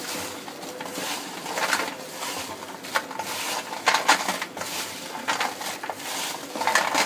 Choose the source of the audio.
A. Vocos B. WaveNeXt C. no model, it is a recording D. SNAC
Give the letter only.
C